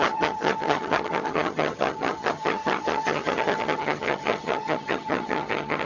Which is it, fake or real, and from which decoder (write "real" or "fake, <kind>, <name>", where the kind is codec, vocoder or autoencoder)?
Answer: fake, vocoder, HiFi-GAN